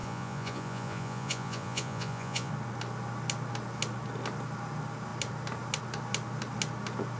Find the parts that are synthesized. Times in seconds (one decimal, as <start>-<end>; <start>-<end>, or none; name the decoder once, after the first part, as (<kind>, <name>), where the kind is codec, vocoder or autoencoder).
0.0-2.5 (vocoder, Vocos)